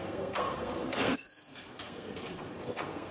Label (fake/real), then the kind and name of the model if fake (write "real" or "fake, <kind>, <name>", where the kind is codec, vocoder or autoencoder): fake, codec, SNAC